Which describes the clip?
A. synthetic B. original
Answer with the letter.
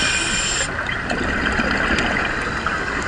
B